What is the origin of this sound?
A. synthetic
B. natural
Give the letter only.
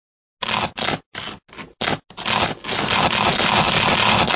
B